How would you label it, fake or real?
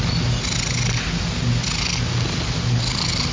real